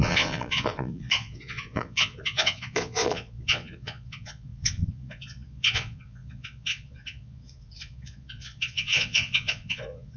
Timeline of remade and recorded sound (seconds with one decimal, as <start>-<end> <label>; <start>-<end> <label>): 0.0-10.2 remade